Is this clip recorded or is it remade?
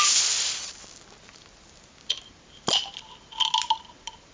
recorded